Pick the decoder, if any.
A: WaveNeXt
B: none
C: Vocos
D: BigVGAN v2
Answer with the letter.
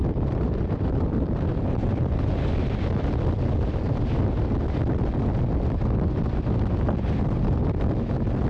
D